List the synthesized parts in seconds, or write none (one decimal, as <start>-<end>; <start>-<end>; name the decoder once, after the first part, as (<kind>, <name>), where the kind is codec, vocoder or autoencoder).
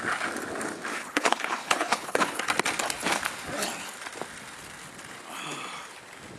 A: 0.9-2.4 (codec, HILCodec)